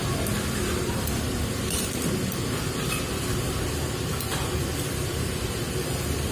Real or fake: fake